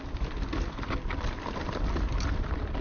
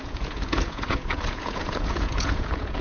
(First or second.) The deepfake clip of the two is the second